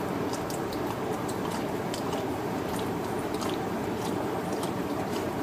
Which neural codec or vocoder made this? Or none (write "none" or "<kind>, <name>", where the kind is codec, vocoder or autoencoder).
vocoder, BigVGAN v2